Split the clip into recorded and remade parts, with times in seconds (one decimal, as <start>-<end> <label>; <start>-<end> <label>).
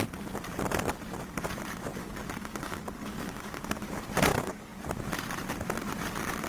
0.0-2.0 recorded; 2.0-3.8 remade; 3.8-4.3 recorded; 4.3-4.8 remade; 4.8-6.5 recorded